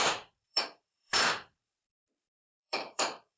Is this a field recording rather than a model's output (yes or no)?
no